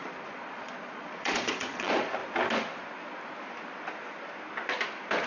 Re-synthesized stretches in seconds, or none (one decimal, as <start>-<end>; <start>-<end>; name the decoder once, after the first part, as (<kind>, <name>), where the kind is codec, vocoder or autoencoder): 0.0-2.2 (vocoder, Vocos)